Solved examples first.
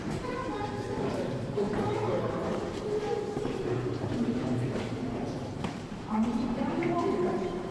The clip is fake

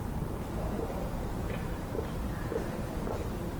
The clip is fake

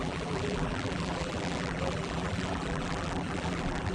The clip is fake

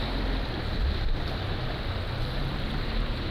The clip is real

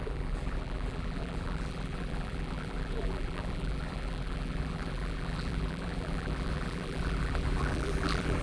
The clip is fake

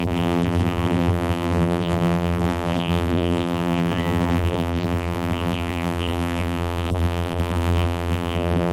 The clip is fake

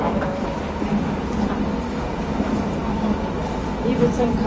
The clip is real